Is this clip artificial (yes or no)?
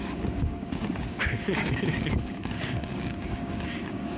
yes